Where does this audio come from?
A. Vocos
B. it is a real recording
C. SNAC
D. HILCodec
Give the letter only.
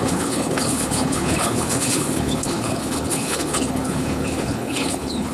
D